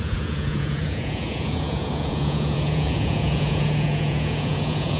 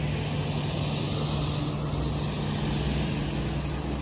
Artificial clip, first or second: first